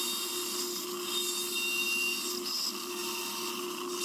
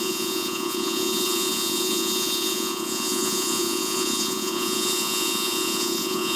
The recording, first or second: first